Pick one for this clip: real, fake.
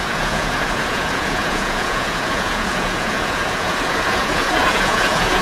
fake